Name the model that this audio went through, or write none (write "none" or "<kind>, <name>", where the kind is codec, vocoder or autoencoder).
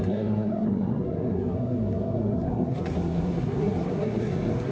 codec, SNAC